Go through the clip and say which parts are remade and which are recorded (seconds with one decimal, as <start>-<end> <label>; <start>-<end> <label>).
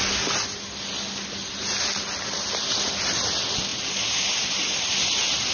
0.0-5.5 recorded